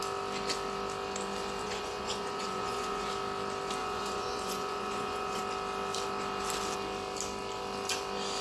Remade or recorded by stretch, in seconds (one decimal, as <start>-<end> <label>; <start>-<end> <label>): 0.0-1.6 recorded; 1.6-3.1 remade; 3.1-3.8 recorded; 3.8-5.4 remade; 5.4-8.4 recorded

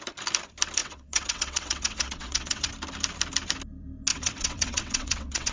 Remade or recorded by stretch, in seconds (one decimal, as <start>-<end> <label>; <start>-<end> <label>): 0.0-0.8 recorded; 0.8-2.7 remade; 2.7-4.1 recorded; 4.1-5.5 remade

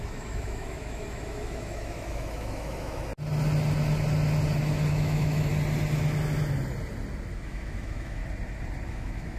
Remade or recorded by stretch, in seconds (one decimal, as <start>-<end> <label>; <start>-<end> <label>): 0.0-3.1 remade; 3.1-4.9 recorded; 4.9-5.5 remade; 5.5-7.3 recorded; 7.3-8.2 remade; 8.2-8.9 recorded; 8.9-9.4 remade

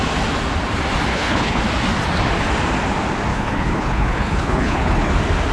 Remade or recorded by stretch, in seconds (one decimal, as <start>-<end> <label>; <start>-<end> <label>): 0.0-1.1 recorded; 1.1-1.6 remade; 1.6-3.3 recorded; 3.3-5.1 remade; 5.1-5.5 recorded

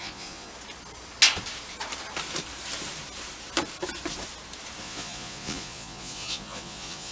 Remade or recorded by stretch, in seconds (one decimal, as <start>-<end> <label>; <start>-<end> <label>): 0.0-0.5 remade; 0.5-4.8 recorded; 4.8-7.1 remade

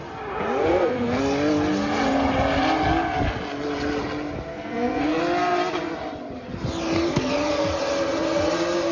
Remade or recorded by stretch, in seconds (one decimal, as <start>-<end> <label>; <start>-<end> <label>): 0.0-0.6 recorded; 0.6-1.2 remade; 1.2-4.5 recorded; 4.5-5.2 remade; 5.2-8.9 recorded